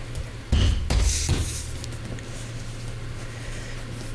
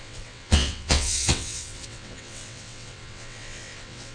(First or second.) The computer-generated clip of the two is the second